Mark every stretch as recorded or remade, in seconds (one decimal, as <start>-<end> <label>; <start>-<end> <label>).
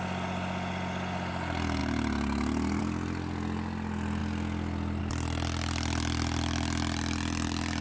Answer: 0.0-7.8 recorded